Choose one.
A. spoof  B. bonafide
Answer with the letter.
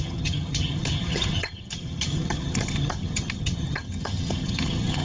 A